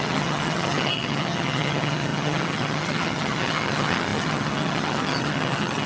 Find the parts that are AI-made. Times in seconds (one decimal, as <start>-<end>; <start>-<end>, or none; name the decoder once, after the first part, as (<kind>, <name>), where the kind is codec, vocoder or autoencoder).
0.0-5.9 (vocoder, HiFi-GAN)

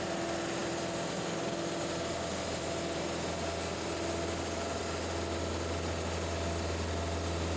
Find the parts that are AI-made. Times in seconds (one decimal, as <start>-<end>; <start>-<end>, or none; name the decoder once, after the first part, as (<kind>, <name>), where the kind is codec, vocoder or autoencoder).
none

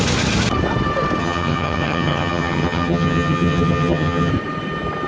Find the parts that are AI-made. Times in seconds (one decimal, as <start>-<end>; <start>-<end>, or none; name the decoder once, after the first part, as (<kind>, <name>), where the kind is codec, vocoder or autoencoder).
1.2-4.3 (vocoder, HiFi-GAN)